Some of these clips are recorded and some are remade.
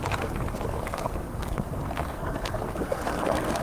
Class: remade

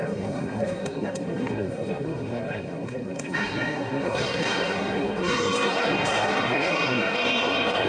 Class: remade